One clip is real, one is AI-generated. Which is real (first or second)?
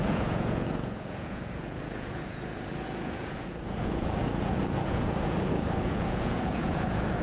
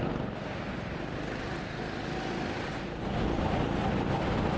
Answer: second